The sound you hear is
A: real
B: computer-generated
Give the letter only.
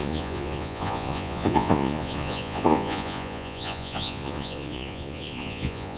B